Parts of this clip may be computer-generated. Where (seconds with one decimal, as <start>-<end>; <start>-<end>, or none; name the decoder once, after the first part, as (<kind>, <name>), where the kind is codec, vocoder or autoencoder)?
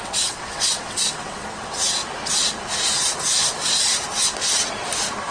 0.0-2.0 (vocoder, WaveNeXt)